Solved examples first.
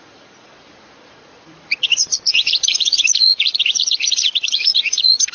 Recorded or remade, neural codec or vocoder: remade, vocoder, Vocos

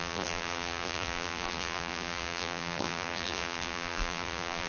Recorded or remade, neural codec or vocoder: remade, vocoder, BigVGAN v2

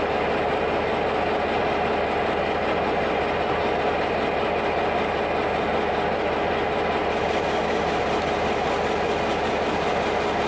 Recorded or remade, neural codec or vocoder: recorded